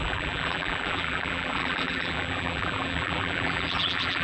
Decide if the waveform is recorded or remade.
remade